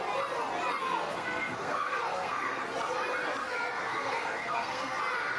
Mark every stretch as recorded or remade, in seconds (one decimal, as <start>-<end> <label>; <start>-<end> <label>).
0.0-0.8 recorded; 0.8-2.6 remade; 2.6-3.4 recorded; 3.4-5.0 remade; 5.0-5.4 recorded